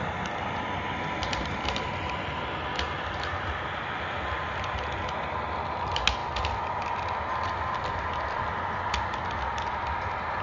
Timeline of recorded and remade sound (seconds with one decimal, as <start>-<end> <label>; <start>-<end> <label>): 0.0-10.4 recorded